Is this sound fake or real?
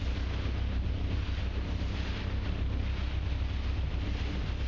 real